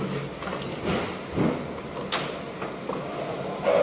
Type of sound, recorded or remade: recorded